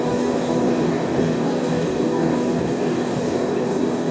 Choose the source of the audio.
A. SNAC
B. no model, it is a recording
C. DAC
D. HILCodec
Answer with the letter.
C